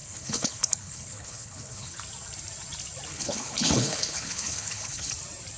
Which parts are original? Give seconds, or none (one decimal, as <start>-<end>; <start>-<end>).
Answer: 2.0-3.1; 5.1-5.6